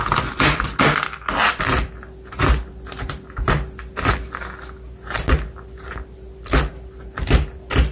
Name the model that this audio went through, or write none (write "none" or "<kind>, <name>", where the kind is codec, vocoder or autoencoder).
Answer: none